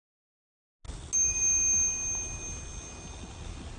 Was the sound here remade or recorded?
recorded